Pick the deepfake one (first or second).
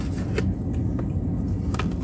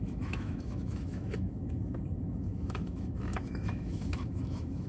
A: second